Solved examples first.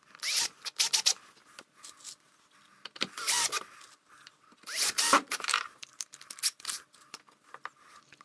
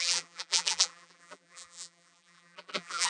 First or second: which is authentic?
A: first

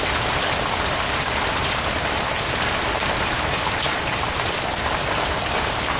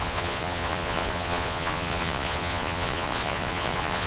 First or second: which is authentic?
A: first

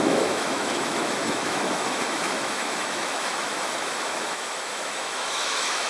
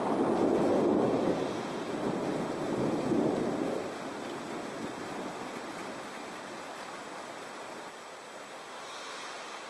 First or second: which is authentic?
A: second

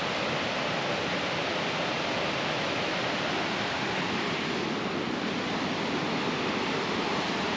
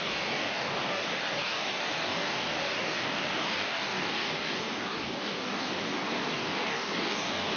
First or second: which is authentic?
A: first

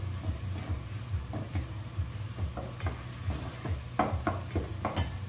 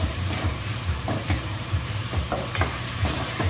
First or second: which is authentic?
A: first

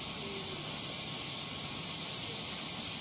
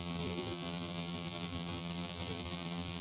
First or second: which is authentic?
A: first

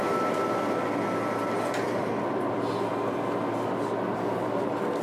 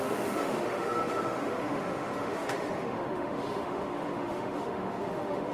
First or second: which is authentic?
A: first